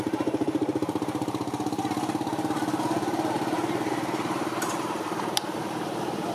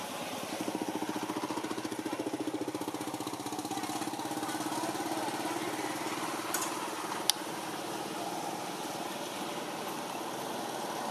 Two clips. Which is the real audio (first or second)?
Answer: second